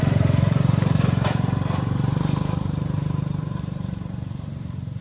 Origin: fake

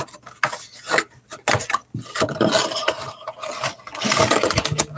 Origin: real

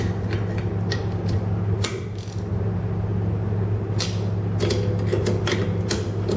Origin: real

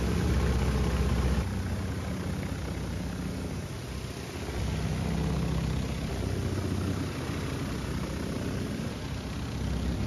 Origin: real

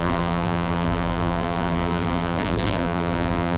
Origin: fake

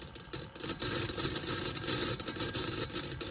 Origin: fake